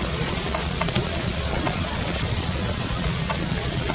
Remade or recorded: remade